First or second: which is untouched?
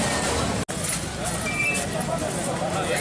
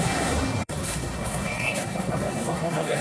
first